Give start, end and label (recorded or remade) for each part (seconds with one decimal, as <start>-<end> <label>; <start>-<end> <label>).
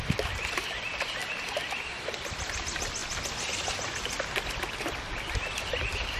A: 0.0-6.2 recorded